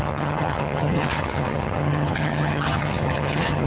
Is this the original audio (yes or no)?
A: no